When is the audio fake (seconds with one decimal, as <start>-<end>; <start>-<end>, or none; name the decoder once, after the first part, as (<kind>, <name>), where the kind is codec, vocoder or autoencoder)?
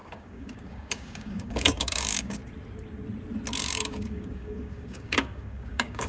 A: 0.0-2.4 (codec, DAC); 3.6-6.1